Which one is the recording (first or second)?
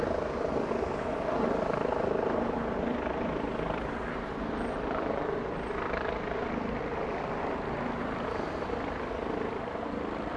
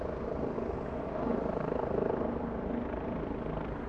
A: second